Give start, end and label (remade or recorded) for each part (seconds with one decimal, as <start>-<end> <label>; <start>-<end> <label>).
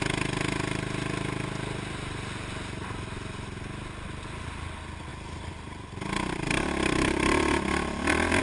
0.0-5.1 recorded; 5.1-8.4 remade